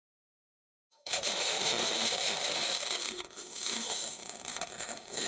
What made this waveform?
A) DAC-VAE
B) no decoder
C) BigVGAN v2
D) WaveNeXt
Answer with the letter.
A